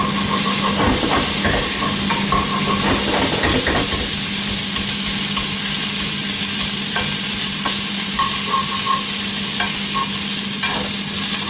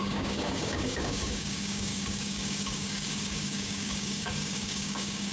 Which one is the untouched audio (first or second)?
first